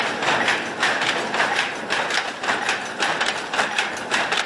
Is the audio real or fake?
real